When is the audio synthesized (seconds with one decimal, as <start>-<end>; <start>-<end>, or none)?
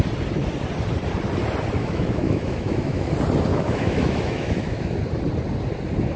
1.8-3.1; 3.5-5.0